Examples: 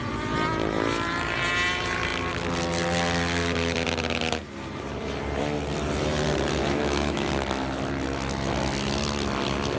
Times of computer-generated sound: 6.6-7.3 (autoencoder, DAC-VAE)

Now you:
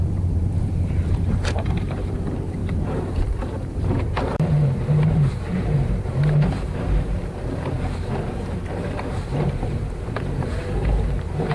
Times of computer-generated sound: 0.0-11.5 (vocoder, BigVGAN v2)

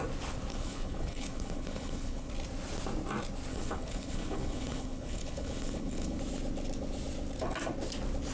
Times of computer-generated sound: 0.5-2.3 (codec, HILCodec); 3.5-6.2

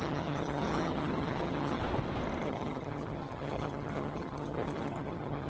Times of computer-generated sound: 0.0-1.8 (vocoder, HiFi-GAN); 2.4-5.5

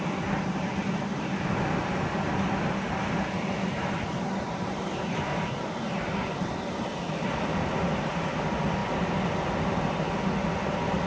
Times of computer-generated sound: none